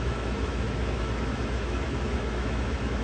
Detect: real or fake fake